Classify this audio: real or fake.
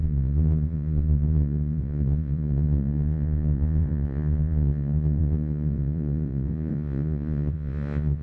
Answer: fake